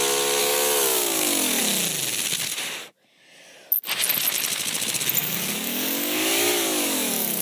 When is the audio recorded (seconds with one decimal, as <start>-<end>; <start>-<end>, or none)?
0.0-0.4; 1.6-5.2